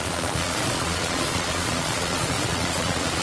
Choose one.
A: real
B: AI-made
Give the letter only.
B